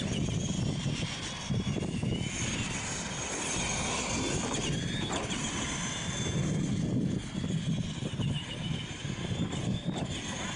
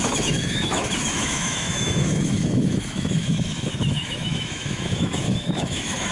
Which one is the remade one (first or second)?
second